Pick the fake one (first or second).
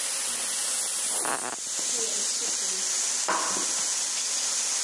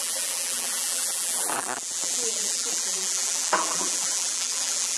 second